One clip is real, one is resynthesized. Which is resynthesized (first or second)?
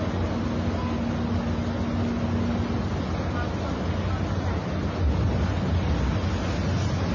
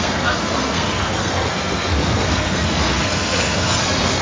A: second